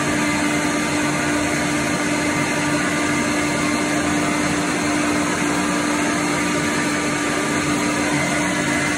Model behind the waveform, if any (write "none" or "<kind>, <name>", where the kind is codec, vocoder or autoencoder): none